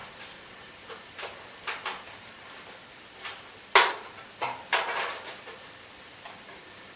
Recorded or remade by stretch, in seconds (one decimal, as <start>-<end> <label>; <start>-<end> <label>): 0.0-2.2 recorded; 2.2-2.8 remade; 2.8-4.4 recorded; 4.4-5.1 remade; 5.1-7.0 recorded